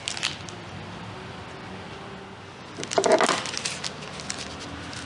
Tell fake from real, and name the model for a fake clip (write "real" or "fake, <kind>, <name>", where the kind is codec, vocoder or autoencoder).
real